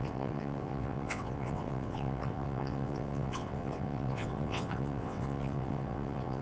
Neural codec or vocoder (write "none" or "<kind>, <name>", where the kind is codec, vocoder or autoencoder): vocoder, WaveNeXt